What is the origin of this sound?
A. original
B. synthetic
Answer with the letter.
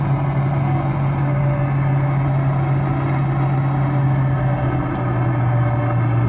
A